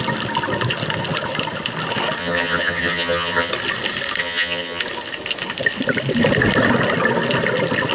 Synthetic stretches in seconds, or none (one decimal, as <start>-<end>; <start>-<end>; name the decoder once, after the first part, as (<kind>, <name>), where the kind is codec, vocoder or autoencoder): 2.2-3.5 (vocoder, HiFi-GAN); 4.2-4.8